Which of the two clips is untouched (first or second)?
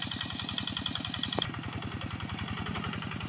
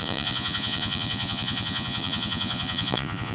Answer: first